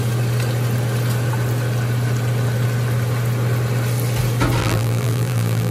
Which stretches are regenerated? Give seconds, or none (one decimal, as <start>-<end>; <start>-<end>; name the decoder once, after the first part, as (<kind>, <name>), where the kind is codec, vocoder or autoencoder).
4.6-5.7 (vocoder, BigVGAN v2)